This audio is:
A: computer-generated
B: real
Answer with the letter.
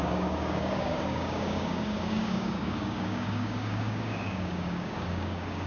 A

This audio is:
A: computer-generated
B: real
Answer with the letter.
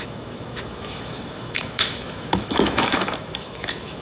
A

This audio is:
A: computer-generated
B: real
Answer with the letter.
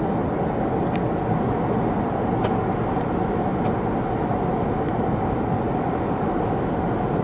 B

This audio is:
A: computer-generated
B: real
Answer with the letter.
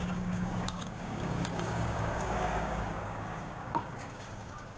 A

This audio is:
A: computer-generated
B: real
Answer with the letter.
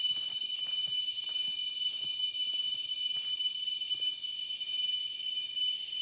B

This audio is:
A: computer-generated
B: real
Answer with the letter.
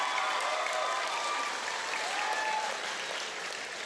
B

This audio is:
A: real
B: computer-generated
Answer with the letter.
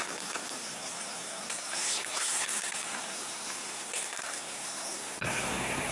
B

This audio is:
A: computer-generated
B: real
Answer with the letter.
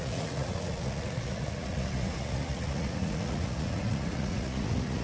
A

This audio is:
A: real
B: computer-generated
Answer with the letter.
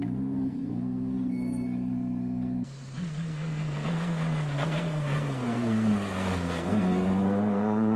B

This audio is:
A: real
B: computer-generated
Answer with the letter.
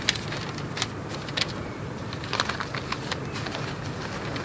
A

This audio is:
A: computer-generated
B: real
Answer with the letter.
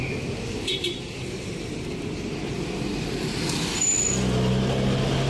B